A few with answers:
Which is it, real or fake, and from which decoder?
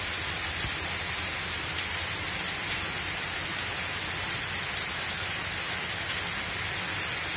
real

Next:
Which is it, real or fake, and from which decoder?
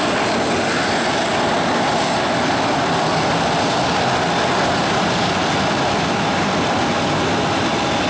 real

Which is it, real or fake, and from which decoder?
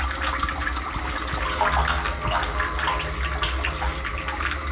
real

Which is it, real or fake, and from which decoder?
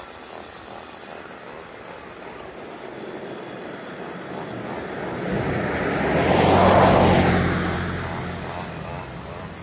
real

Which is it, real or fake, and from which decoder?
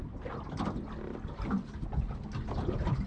real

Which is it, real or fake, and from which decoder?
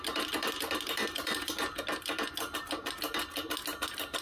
real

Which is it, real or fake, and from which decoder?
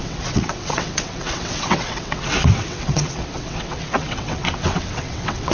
fake, vocoder, WaveNeXt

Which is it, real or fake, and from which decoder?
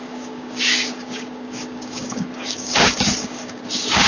fake, codec, DAC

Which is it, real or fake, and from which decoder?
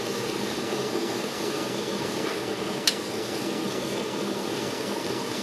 fake, codec, SNAC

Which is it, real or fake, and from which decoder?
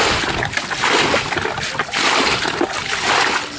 real